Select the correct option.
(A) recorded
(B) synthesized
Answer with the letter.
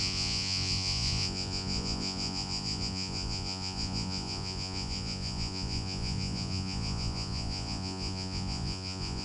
B